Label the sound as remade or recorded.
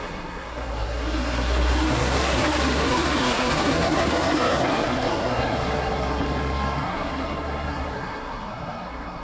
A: remade